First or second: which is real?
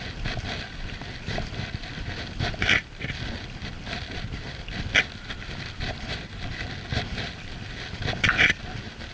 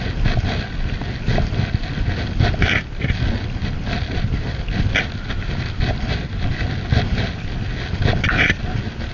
second